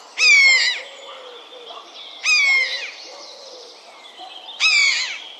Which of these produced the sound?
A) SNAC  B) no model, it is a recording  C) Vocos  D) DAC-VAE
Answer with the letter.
B